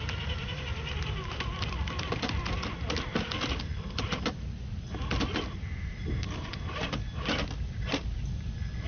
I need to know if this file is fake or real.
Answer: real